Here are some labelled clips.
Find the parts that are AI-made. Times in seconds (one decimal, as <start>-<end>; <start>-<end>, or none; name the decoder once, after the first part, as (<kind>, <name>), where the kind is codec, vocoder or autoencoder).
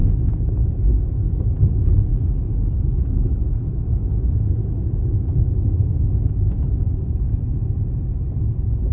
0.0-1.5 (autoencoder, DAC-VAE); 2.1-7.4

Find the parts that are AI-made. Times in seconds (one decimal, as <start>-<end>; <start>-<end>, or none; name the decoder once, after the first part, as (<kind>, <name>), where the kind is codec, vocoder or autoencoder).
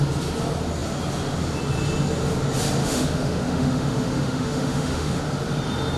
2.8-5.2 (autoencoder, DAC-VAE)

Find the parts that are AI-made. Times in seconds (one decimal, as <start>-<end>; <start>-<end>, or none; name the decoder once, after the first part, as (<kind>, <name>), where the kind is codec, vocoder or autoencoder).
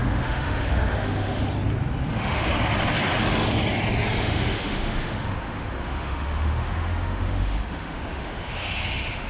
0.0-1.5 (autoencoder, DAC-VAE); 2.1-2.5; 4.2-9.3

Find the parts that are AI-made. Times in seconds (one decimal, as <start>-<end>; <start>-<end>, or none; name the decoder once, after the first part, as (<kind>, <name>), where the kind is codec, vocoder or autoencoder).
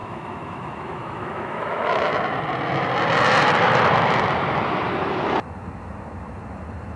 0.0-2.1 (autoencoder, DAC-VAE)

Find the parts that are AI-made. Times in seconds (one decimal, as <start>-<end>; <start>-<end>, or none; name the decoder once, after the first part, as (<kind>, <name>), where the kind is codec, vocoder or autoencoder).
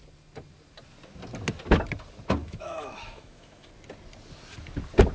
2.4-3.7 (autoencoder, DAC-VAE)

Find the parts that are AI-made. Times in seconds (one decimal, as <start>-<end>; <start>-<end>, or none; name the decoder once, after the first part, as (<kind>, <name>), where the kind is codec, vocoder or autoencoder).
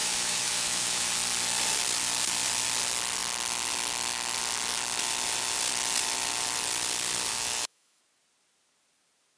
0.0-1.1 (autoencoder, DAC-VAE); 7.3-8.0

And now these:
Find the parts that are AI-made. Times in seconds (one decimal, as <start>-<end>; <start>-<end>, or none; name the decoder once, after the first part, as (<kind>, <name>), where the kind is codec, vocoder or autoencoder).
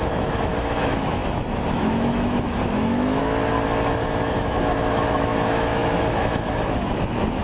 0.0-3.2 (autoencoder, DAC-VAE); 4.3-7.4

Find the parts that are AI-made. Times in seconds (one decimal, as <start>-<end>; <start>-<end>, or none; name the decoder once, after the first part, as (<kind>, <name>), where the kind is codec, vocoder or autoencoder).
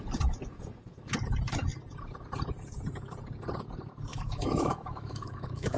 4.1-5.8 (autoencoder, DAC-VAE)